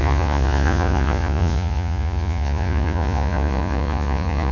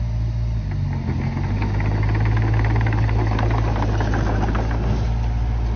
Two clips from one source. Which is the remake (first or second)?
first